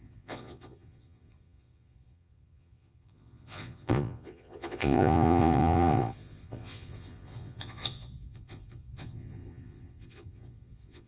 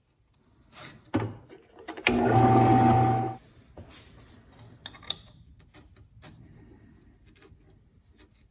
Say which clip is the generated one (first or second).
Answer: first